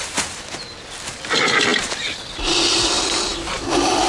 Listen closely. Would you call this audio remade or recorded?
recorded